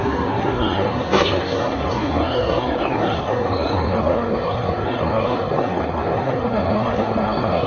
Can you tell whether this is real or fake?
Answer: fake